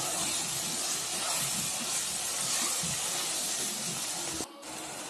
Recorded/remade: recorded